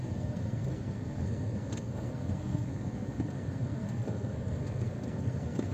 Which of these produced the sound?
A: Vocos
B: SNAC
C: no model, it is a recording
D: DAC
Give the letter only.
B